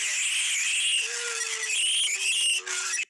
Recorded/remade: recorded